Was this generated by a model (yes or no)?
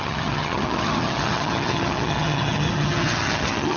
yes